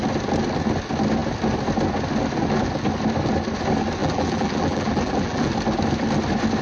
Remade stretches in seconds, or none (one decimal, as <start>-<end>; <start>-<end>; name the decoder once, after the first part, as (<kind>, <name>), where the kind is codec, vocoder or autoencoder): 4.0-5.5 (vocoder, BigVGAN v2)